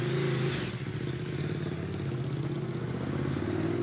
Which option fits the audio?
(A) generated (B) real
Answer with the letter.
B